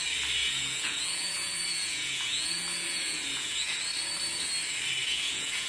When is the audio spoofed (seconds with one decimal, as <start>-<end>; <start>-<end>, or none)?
0.4-3.8; 5.0-5.7